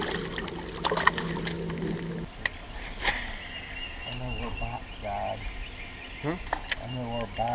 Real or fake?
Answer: real